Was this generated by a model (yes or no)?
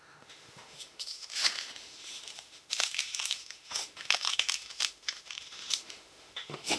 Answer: yes